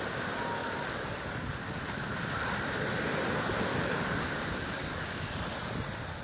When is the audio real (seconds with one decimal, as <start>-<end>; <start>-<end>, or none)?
0.0-0.6; 2.2-3.7; 5.3-6.2

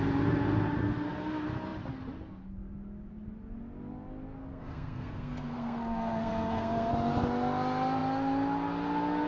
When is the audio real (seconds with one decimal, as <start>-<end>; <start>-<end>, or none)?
0.0-4.5; 6.9-9.3

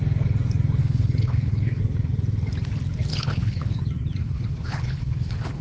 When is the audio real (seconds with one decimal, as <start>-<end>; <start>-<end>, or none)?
0.0-0.8; 1.8-3.1; 3.8-4.2

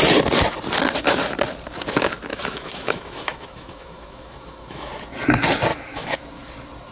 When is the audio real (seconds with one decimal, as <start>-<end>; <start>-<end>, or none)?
0.0-2.3; 4.9-5.7; 6.2-6.9

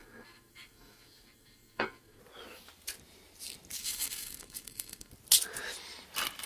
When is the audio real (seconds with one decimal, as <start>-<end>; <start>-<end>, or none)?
2.2-3.8; 5.1-6.5

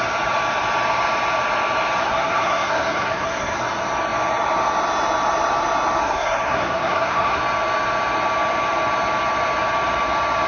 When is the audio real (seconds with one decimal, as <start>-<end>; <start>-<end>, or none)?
0.0-2.0; 3.6-6.0; 7.4-10.5